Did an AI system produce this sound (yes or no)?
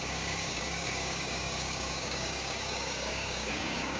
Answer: yes